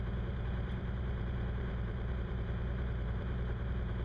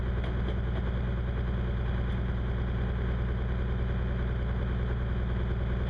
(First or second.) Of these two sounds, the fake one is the first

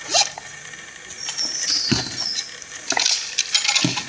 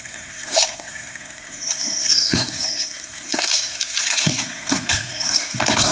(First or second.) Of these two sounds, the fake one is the second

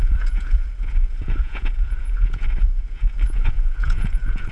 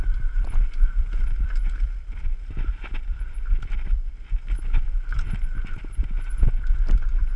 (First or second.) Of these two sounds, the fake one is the first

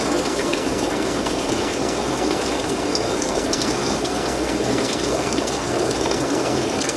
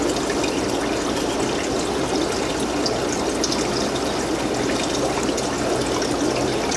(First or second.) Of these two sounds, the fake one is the first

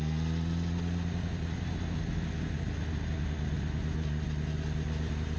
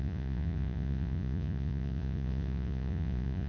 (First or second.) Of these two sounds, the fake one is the second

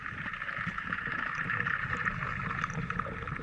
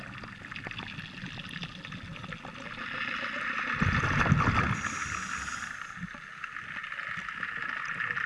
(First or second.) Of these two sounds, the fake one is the first